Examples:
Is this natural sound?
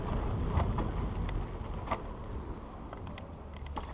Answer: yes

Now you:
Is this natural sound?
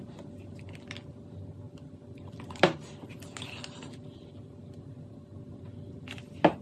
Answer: yes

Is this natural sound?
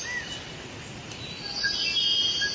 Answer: yes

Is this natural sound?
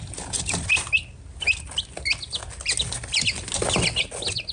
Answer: yes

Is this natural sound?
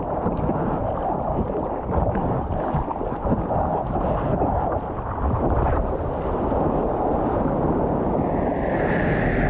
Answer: no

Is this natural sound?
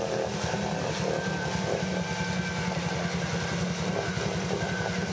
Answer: yes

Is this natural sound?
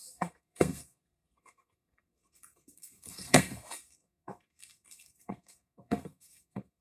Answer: no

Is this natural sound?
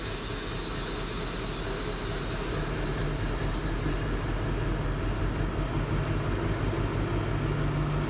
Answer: yes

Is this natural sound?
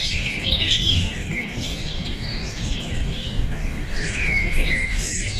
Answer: no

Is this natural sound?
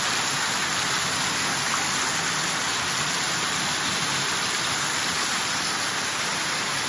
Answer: yes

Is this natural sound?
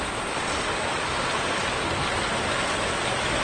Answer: yes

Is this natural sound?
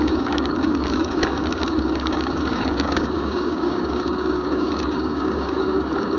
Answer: no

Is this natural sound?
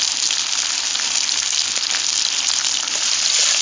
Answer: yes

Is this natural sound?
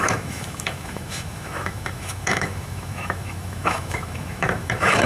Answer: no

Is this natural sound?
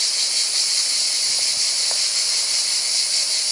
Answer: yes